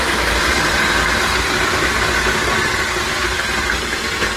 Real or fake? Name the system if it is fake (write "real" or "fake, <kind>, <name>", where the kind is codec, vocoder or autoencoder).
real